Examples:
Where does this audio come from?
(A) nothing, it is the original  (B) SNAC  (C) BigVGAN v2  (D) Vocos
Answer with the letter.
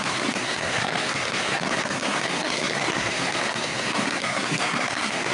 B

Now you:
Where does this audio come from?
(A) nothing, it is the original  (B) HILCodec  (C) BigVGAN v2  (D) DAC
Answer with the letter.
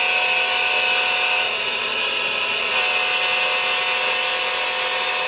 A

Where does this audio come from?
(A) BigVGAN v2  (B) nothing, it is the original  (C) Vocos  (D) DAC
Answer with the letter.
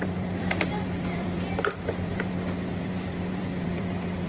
A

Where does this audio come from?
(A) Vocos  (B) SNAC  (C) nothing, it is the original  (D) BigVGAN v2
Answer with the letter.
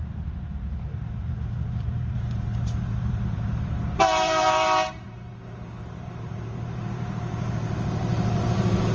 D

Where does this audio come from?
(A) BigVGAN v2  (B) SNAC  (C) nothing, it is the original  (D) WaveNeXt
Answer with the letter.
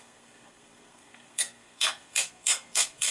B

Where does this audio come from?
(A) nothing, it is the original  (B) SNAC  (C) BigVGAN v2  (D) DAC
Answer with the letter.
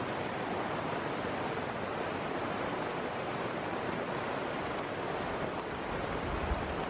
A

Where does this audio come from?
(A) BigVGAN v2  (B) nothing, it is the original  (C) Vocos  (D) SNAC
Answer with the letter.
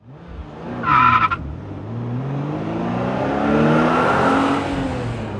B